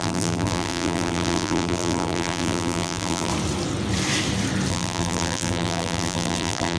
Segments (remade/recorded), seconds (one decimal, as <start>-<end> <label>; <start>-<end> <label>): 0.0-3.3 remade; 3.3-4.7 recorded; 4.7-6.8 remade